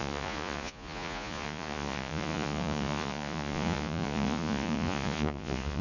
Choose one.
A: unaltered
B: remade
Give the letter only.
B